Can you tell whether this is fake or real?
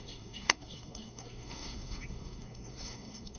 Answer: fake